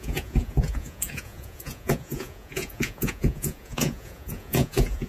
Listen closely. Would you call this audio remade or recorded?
remade